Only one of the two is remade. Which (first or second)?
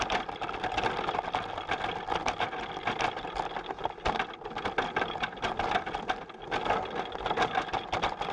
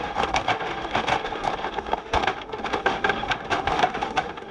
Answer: second